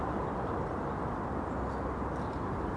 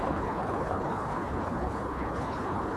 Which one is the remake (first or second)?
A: second